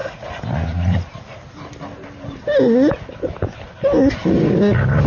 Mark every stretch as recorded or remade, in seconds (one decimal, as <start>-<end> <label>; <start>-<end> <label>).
0.0-5.1 recorded